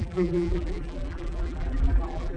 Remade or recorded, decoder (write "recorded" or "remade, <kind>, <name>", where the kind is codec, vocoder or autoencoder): remade, vocoder, BigVGAN v2